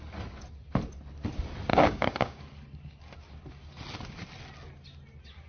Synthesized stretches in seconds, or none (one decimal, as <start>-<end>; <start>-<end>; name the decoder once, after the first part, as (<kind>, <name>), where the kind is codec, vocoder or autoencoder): 1.7-2.4 (codec, DAC)